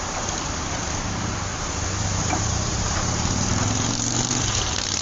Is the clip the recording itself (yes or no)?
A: no